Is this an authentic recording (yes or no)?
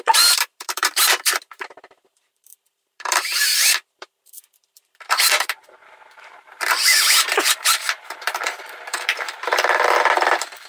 no